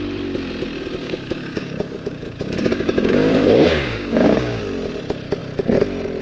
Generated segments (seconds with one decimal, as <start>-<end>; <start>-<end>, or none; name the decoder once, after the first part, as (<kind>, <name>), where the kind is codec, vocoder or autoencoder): 1.0-4.6 (codec, DAC)